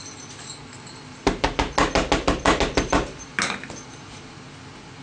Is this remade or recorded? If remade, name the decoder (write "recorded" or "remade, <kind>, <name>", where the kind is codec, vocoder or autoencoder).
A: recorded